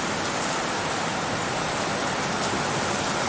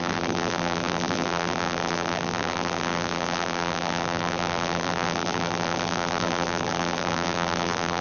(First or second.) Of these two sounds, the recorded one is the first